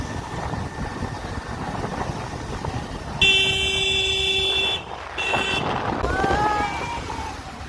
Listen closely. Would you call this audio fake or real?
real